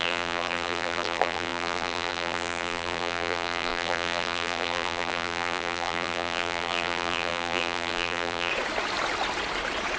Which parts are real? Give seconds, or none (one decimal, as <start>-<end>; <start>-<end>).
8.5-10.0